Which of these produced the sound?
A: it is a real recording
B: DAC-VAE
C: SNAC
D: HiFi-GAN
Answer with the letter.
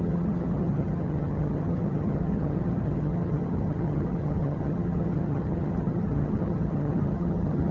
D